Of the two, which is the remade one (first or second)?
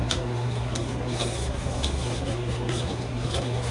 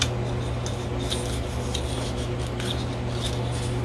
first